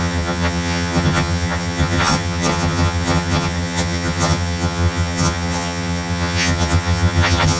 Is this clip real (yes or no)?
no